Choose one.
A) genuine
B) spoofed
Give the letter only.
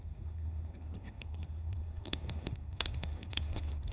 B